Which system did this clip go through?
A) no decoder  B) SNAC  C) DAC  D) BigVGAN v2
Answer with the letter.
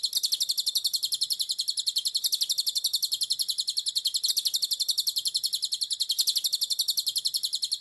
D